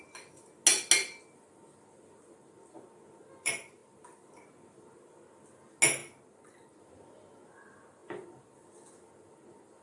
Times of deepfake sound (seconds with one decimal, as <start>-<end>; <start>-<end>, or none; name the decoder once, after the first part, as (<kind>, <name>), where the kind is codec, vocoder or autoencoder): none

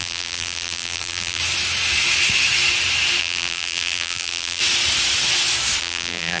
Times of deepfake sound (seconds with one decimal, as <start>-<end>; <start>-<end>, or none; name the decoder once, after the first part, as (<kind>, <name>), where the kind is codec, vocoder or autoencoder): 0.0-1.4 (vocoder, BigVGAN v2); 3.2-4.6; 5.8-6.4

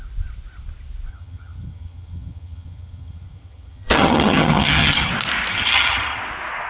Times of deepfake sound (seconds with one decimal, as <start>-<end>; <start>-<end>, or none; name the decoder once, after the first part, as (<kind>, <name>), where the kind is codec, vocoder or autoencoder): 1.1-5.1 (vocoder, HiFi-GAN); 5.5-6.2